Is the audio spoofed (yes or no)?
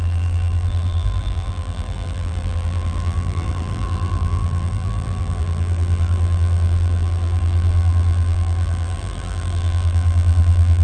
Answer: yes